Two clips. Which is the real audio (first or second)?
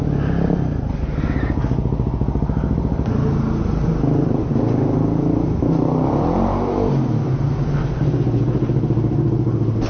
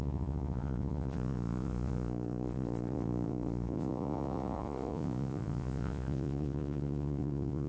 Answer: first